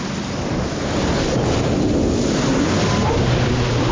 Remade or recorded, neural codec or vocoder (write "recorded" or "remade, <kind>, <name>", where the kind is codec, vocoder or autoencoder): remade, vocoder, BigVGAN v2